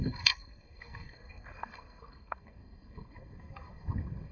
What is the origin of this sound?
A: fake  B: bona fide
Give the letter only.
A